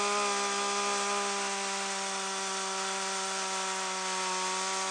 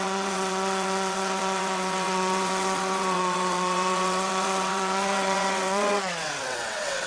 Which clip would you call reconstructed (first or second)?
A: second